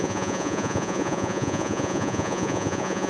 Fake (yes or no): yes